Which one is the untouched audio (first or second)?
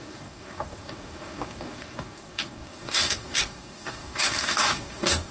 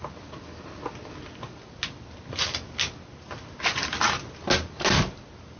second